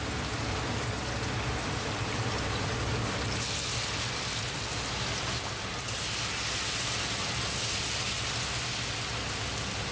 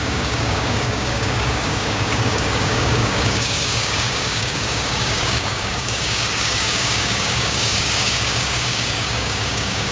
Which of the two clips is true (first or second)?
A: first